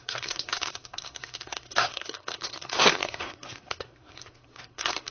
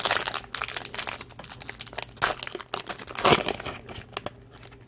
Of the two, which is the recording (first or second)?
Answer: second